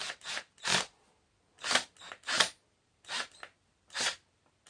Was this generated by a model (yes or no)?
no